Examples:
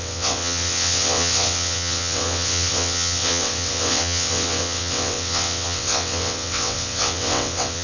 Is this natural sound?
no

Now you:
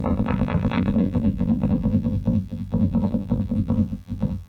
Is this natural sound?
no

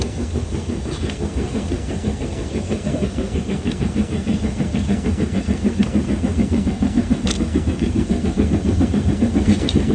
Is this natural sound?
no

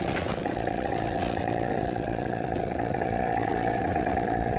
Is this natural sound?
no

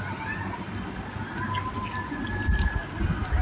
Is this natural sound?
yes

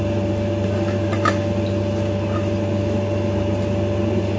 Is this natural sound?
yes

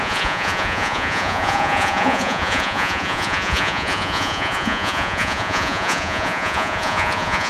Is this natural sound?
no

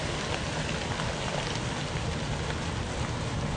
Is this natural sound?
yes